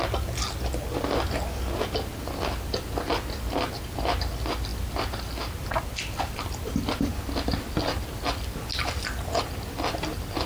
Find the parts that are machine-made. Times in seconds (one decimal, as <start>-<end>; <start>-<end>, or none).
none